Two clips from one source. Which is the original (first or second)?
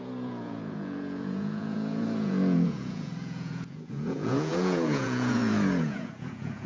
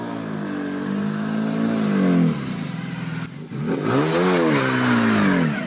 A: second